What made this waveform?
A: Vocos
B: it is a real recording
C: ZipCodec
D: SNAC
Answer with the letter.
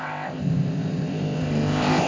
C